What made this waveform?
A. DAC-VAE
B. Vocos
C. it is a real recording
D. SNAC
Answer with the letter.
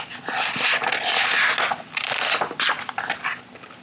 C